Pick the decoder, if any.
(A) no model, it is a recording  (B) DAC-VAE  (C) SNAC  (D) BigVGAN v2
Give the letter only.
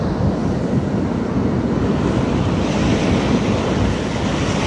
A